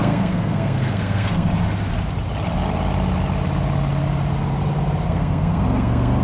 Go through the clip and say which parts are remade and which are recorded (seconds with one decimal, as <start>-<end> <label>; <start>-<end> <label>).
0.0-1.5 remade; 1.5-5.1 recorded; 5.1-6.2 remade